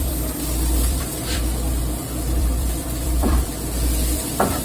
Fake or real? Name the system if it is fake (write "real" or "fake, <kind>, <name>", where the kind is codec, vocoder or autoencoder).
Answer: fake, vocoder, BigVGAN v2